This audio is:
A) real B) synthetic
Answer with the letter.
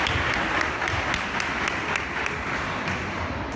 A